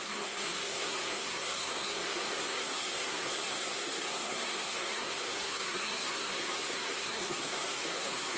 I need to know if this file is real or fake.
fake